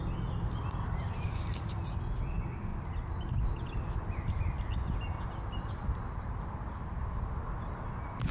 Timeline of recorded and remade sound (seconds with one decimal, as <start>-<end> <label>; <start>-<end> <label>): 0.0-8.3 recorded